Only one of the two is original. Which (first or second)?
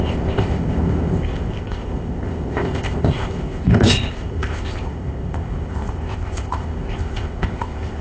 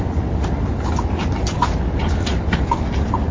second